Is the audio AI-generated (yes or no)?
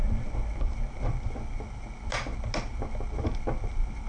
no